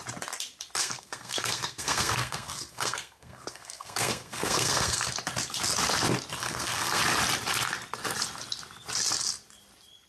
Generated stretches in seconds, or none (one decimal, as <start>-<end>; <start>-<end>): 0.8-5.1; 6.4-7.0

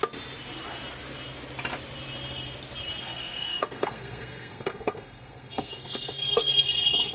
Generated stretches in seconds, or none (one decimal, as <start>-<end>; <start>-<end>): 3.0-7.1

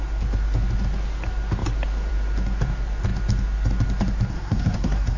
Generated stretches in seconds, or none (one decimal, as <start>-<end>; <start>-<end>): 4.3-5.2